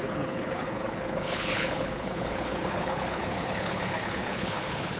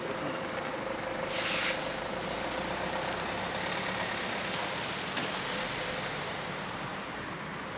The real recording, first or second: second